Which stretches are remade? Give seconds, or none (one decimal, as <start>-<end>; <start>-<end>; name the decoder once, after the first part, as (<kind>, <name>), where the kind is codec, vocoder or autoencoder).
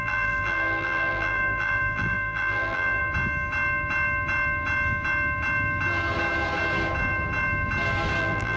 0.0-3.0 (vocoder, BigVGAN v2); 8.2-8.6